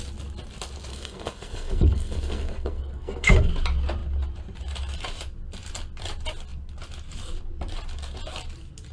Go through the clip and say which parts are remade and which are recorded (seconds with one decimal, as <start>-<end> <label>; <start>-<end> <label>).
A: 0.0-0.9 recorded; 0.9-3.5 remade; 3.5-8.9 recorded